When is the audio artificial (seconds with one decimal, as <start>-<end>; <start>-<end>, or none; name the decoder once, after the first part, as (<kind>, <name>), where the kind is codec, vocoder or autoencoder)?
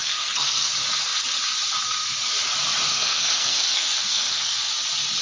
0.0-0.7 (codec, SNAC); 2.9-4.7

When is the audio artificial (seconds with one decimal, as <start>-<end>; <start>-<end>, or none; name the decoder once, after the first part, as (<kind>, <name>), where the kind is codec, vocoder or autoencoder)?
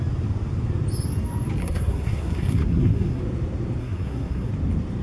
1.6-3.2 (codec, SNAC); 3.8-4.5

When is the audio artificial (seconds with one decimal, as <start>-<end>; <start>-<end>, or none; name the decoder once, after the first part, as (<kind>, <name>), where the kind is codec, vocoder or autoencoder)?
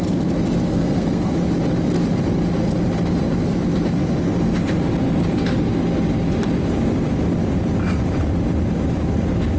0.7-1.3 (codec, SNAC)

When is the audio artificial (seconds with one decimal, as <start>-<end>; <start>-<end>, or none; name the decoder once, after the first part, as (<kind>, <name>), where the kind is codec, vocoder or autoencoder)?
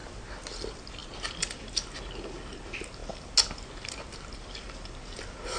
none